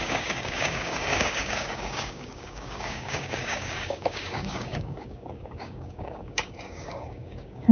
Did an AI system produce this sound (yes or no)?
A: yes